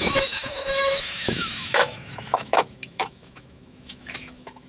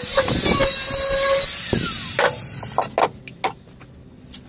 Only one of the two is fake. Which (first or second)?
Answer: first